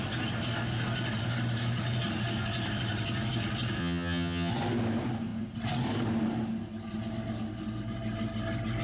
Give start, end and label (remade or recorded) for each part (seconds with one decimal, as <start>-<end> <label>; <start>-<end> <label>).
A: 0.0-3.8 recorded; 3.8-4.5 remade; 4.5-8.8 recorded